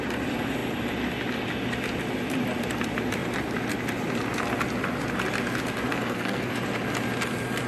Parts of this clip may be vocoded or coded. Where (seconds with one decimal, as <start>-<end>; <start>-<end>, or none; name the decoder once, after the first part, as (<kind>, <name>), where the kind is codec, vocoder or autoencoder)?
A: 5.9-6.5 (codec, SNAC)